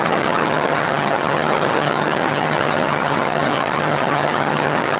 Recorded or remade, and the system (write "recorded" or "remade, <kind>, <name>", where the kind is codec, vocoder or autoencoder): remade, vocoder, HiFi-GAN